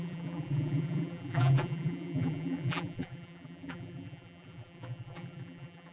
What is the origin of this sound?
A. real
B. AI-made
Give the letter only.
B